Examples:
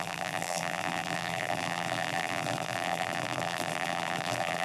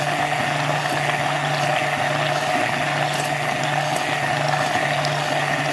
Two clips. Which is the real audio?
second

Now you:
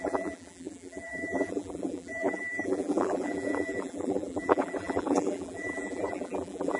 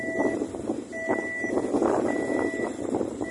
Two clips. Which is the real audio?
second